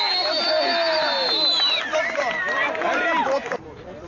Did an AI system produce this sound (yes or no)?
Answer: no